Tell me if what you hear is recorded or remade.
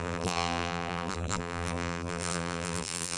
remade